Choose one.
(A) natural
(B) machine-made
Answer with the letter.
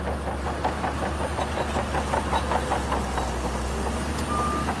A